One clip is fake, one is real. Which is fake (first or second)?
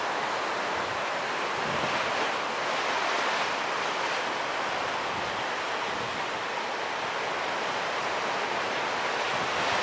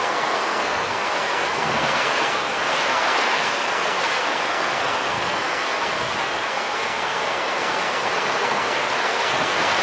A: second